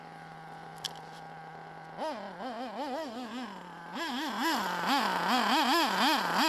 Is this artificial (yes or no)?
no